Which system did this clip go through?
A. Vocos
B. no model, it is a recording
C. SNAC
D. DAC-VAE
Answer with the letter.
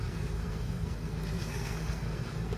C